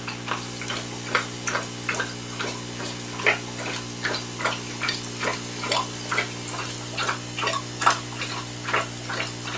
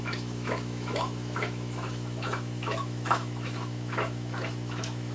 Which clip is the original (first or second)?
first